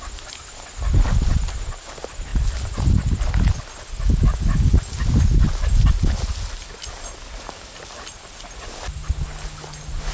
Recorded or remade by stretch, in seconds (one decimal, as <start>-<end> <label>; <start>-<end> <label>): 0.0-10.1 recorded